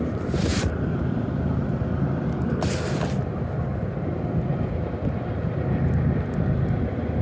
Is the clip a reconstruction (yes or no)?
no